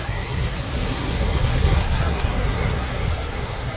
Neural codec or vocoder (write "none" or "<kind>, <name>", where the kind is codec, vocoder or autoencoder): codec, SNAC